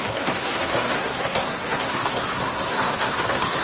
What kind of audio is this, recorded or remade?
remade